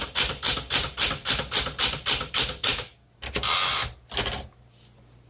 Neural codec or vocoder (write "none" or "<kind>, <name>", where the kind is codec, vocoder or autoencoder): none